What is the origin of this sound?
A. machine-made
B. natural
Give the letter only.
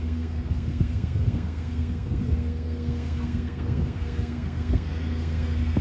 A